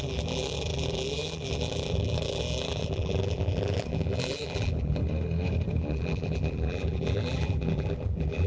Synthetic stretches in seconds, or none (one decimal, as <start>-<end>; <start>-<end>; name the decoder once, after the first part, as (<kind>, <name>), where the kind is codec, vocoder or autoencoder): 0.0-5.0 (vocoder, BigVGAN v2); 5.8-8.5